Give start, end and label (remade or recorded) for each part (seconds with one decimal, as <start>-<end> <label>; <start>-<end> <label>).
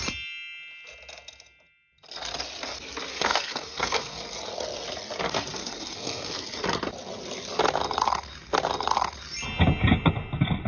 0.0-3.1 recorded; 3.1-4.2 remade; 4.2-5.6 recorded; 5.6-6.4 remade; 6.4-10.7 recorded